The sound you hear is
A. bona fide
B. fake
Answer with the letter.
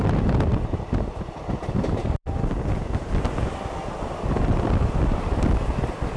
A